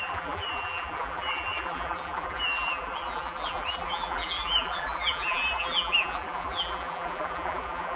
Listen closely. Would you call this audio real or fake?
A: fake